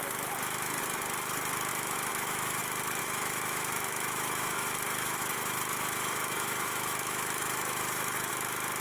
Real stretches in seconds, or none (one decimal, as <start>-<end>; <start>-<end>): 0.0-1.7; 2.6-3.0; 8.3-8.8